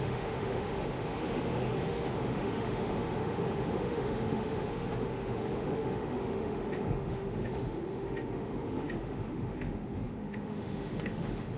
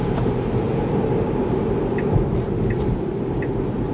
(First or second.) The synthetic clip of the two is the first